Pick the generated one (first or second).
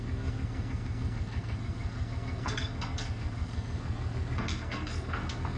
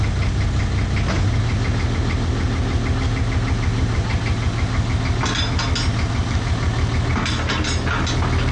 first